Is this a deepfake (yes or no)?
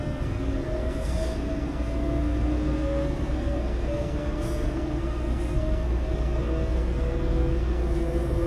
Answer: yes